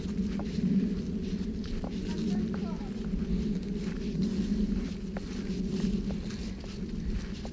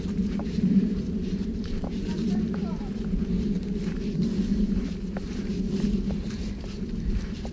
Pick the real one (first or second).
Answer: first